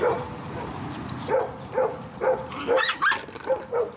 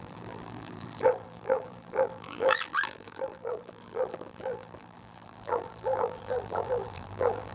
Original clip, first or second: first